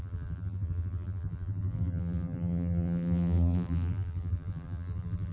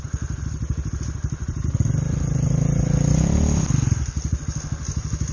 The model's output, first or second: first